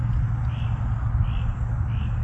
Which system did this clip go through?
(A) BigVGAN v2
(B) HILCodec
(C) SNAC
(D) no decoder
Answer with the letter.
D